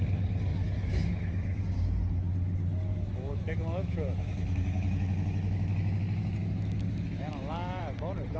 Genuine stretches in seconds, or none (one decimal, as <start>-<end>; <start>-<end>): 0.0-0.5; 1.6-2.9; 7.8-8.4